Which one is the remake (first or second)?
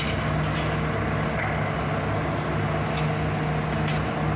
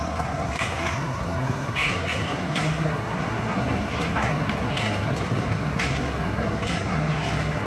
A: second